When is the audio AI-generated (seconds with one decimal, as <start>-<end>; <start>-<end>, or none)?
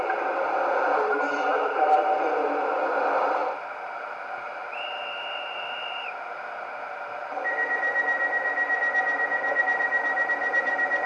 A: 0.0-4.6; 9.6-11.1